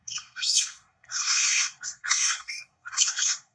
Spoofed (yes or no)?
yes